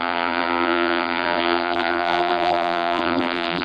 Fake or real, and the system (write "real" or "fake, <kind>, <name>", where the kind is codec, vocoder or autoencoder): fake, vocoder, BigVGAN v2